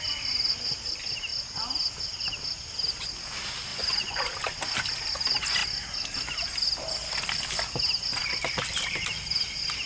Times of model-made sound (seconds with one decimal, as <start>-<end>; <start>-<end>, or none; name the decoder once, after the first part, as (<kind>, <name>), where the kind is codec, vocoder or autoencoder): 3.7-4.2 (vocoder, Vocos)